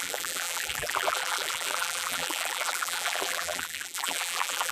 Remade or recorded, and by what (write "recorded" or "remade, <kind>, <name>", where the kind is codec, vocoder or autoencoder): remade, vocoder, BigVGAN v2